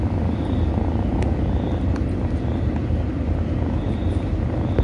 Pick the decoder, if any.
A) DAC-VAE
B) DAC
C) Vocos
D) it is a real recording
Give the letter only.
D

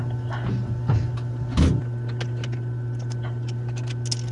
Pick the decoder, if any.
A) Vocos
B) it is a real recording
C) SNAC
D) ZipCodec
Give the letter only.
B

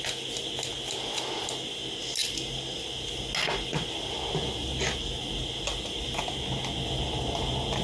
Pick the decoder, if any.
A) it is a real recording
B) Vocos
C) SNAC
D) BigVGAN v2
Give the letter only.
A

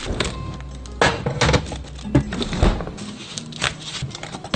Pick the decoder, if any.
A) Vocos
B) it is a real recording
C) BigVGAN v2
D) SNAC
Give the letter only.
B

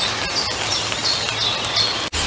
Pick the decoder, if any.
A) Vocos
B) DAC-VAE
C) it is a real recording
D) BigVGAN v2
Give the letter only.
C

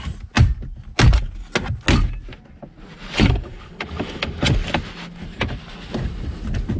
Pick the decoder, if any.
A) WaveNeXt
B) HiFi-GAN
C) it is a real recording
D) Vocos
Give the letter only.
C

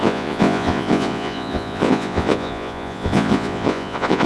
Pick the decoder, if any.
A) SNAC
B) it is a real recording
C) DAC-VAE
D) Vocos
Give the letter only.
D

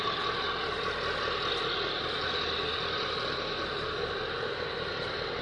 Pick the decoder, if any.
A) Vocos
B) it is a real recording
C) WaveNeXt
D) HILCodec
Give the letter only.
B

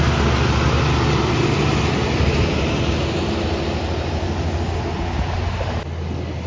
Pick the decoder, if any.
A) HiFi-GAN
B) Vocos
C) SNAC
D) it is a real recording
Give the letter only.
D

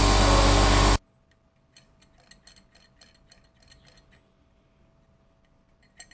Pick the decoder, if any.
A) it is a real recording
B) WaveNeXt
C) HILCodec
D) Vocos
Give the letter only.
A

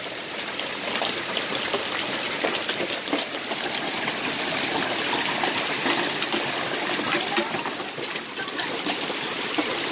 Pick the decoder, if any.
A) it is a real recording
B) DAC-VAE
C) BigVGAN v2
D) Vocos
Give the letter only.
A